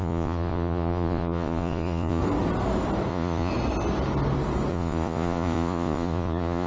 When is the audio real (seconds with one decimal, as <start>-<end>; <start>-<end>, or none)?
2.2-3.1; 3.5-4.7